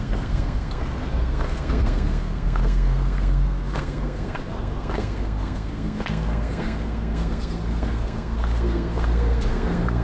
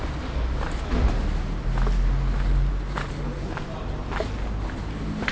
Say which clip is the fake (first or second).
first